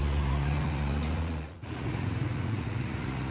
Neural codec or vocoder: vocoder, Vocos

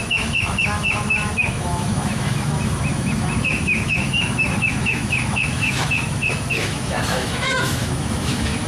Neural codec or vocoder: autoencoder, DAC-VAE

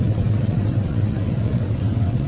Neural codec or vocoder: vocoder, WaveNeXt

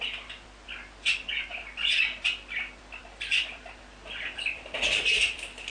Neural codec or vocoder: none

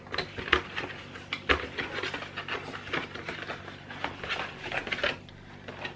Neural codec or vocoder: none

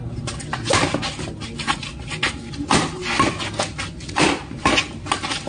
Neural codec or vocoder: none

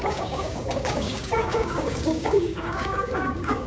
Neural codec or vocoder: codec, DAC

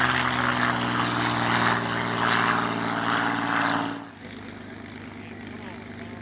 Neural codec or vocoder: none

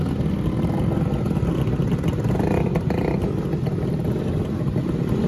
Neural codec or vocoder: none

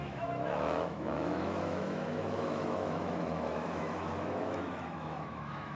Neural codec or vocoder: autoencoder, DAC-VAE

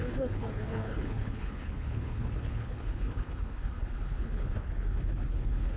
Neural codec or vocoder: codec, HILCodec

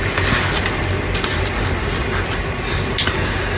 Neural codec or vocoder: none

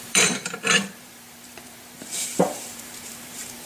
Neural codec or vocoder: vocoder, BigVGAN v2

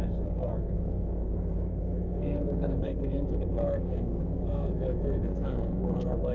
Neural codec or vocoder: codec, SNAC